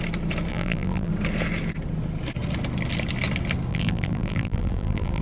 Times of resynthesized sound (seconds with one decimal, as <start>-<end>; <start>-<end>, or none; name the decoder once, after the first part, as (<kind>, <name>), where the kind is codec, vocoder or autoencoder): 0.5-1.1 (vocoder, BigVGAN v2); 3.7-5.2